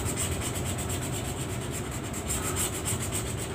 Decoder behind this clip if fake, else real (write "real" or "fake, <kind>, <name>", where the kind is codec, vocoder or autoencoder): real